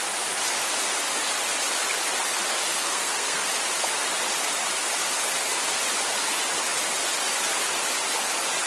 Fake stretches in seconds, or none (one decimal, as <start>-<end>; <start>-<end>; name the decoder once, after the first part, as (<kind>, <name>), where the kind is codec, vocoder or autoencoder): 2.7-3.4 (codec, SNAC)